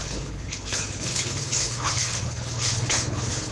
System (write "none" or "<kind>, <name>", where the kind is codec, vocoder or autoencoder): codec, HILCodec